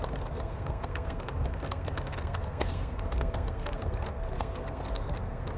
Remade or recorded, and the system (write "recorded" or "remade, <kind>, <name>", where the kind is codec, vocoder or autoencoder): remade, codec, SNAC